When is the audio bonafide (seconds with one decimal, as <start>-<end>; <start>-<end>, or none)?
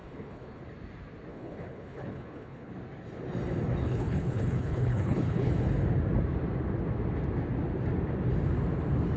0.6-1.3; 2.7-3.8; 5.5-9.2